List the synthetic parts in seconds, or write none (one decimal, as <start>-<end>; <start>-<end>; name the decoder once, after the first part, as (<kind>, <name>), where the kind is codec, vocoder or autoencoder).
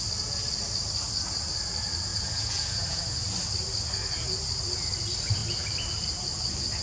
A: 2.1-3.0 (vocoder, Vocos)